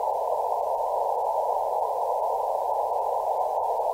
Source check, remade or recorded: recorded